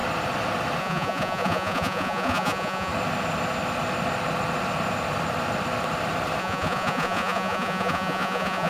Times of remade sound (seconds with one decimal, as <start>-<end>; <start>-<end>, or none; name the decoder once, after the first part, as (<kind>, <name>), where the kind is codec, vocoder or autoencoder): 0.8-2.9 (vocoder, Vocos); 6.4-8.7